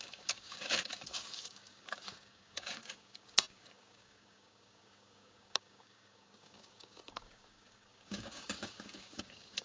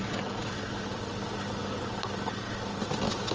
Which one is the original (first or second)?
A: second